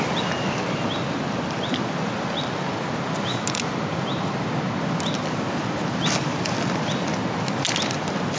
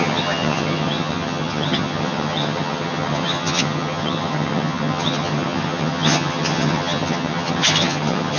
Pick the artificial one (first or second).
second